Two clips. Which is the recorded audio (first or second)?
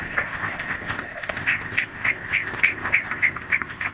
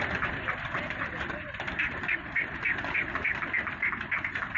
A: second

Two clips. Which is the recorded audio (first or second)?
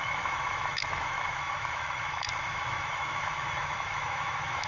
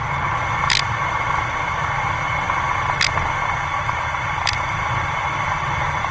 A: second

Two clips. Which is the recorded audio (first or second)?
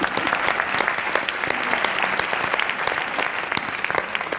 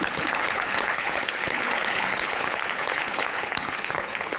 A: first